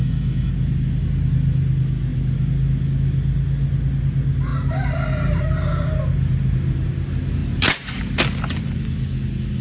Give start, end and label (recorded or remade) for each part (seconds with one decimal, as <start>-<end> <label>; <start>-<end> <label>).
0.0-0.5 remade; 0.5-9.6 recorded